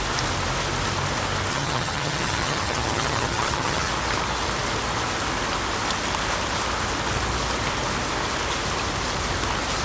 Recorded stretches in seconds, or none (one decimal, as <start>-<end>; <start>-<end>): 0.0-1.5; 3.9-9.8